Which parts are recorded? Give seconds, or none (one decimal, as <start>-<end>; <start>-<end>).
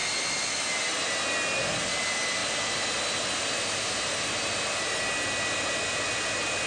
0.0-6.7